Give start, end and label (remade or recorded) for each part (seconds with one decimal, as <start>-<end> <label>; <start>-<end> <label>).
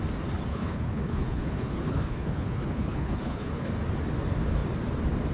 0.0-0.5 recorded; 0.5-3.7 remade; 3.7-5.3 recorded